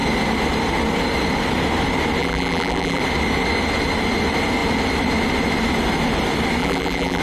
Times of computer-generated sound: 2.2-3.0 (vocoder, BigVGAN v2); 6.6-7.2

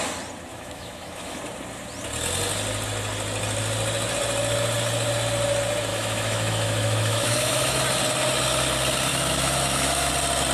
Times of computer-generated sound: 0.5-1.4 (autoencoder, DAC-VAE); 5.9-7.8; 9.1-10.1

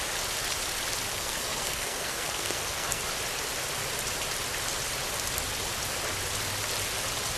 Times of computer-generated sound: 1.1-3.0 (codec, SNAC)

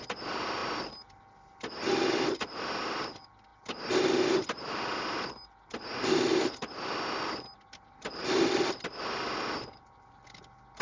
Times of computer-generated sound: none